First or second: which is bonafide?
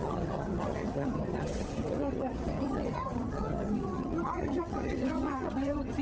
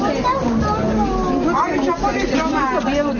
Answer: second